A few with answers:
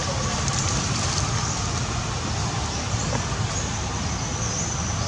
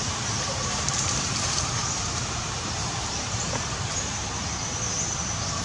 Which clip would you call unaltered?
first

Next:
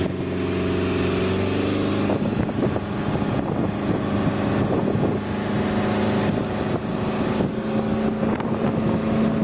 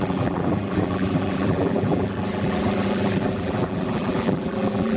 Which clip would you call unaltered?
first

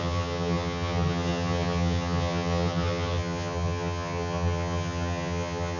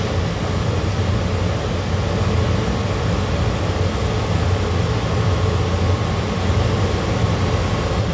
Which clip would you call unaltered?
second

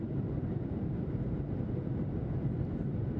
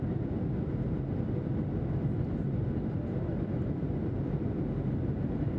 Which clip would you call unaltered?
second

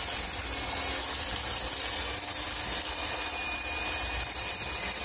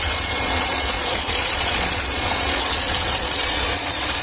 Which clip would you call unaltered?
first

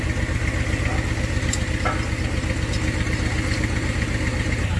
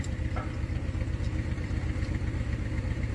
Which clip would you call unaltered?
first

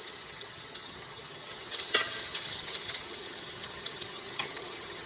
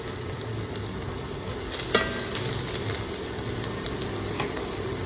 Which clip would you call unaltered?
second